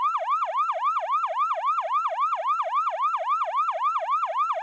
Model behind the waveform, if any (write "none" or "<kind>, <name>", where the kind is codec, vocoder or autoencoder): none